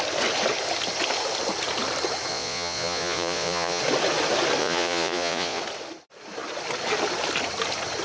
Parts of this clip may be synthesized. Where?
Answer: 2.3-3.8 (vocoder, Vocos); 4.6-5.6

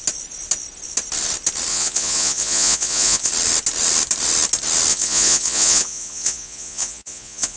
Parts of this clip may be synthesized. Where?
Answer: 1.7-3.3 (vocoder, Vocos); 4.9-7.6

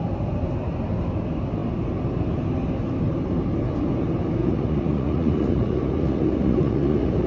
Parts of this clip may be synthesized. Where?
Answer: 4.4-7.3 (vocoder, Vocos)

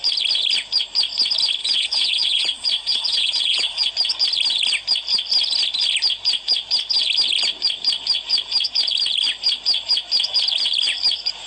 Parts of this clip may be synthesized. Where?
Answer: 1.6-3.9 (vocoder, Vocos)

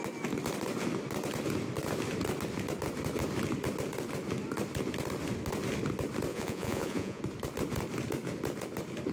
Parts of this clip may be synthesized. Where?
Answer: 6.3-7.2 (vocoder, Vocos)

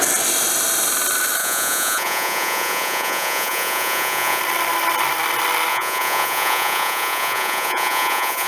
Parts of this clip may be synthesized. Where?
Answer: 1.4-4.4 (vocoder, Vocos); 5.7-8.5

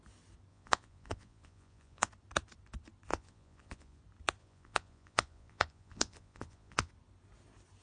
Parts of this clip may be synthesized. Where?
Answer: 0.5-2.1 (vocoder, Vocos); 3.1-4.0; 4.4-6.9